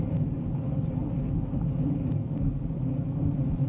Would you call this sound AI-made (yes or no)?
no